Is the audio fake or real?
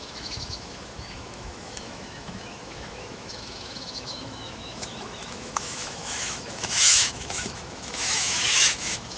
fake